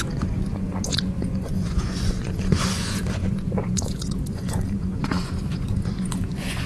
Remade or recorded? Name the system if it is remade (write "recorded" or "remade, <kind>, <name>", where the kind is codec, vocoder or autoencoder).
remade, vocoder, Vocos